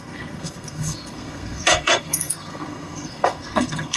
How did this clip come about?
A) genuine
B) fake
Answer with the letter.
B